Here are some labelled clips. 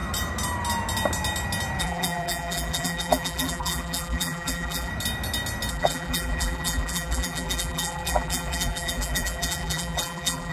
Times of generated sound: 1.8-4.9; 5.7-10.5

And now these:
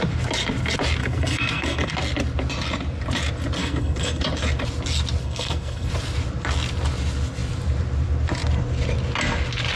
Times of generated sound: 1.0-1.9; 3.6-4.2; 5.2-5.9